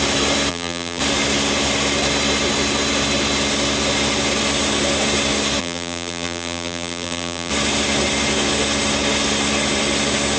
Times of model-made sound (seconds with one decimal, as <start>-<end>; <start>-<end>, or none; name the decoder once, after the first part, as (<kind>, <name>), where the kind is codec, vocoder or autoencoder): 0.5-1.0 (vocoder, BigVGAN v2); 5.6-7.5